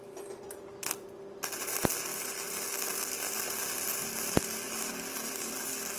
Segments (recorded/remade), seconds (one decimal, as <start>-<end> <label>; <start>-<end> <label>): 0.0-6.0 recorded

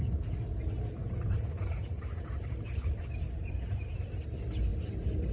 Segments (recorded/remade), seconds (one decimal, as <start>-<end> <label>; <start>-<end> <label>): 0.0-1.0 recorded; 1.0-3.0 remade; 3.0-4.7 recorded; 4.7-5.3 remade